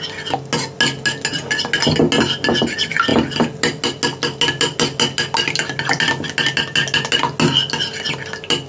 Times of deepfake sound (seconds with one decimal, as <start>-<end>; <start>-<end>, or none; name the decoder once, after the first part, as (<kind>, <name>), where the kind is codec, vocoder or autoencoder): none